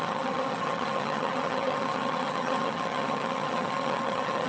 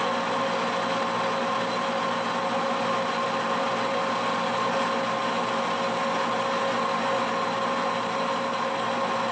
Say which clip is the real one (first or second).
second